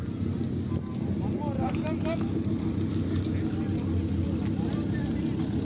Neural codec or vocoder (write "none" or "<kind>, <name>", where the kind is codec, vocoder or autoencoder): none